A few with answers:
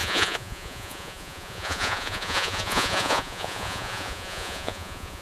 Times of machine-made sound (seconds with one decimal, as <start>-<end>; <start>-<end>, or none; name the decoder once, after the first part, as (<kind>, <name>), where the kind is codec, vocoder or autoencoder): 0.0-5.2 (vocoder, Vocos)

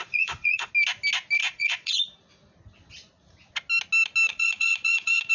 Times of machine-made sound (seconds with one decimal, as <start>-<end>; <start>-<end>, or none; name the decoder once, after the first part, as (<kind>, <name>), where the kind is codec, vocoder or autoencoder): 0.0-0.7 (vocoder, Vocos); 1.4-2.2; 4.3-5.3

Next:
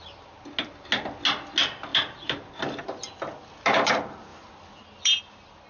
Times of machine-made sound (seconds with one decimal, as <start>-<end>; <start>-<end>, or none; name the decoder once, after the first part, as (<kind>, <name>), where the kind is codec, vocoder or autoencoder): 1.9-2.8 (vocoder, BigVGAN v2); 4.3-5.2